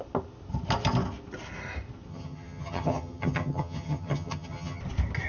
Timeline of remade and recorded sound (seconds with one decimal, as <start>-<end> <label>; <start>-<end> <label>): 0.0-2.1 recorded; 2.1-4.8 remade; 4.8-5.3 recorded